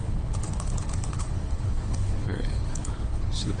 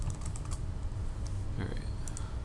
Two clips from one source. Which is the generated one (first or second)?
first